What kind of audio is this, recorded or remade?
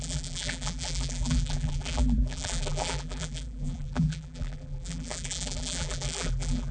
remade